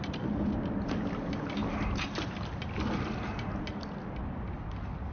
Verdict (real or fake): real